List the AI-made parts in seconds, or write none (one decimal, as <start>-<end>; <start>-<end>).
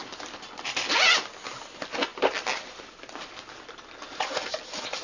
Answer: none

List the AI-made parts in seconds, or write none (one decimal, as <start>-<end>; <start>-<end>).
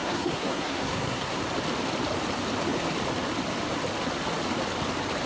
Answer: 0.0-1.4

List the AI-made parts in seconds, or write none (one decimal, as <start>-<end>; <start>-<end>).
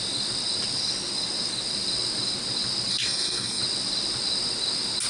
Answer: 2.9-3.6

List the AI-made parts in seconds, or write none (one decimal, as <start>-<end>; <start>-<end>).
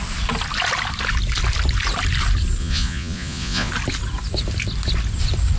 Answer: 2.6-3.7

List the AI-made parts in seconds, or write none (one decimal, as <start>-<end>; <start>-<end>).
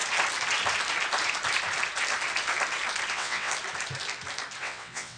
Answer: 3.1-3.5; 4.6-5.2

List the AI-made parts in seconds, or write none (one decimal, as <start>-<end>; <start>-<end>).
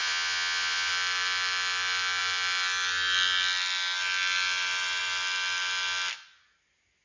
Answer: 0.0-0.9